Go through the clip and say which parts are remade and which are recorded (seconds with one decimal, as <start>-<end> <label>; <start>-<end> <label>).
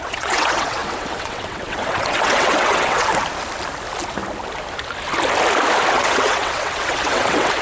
0.0-3.1 remade; 3.1-5.9 recorded; 5.9-7.6 remade